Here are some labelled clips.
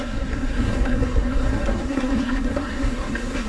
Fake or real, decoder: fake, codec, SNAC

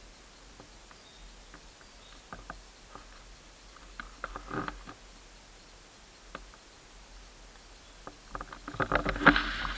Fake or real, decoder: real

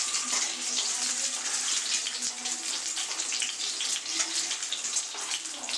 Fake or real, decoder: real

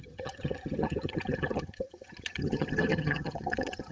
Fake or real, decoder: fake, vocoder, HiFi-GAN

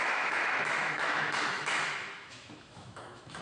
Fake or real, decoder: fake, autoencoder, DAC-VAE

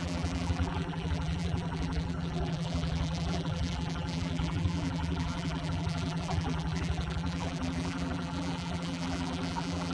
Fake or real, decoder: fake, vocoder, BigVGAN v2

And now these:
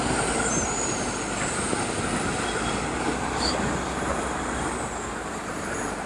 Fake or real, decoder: real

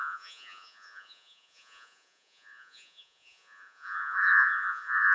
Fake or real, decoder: fake, vocoder, Vocos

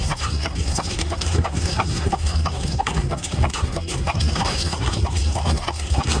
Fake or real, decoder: fake, codec, SNAC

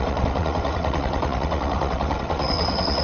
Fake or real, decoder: fake, vocoder, WaveNeXt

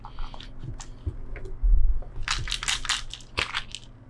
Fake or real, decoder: real